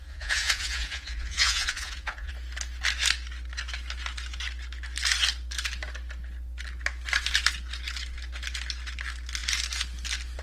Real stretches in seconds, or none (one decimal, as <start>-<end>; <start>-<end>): 2.3-10.4